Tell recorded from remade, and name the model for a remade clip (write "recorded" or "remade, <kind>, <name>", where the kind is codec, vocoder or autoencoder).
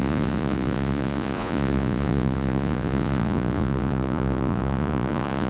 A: remade, vocoder, Vocos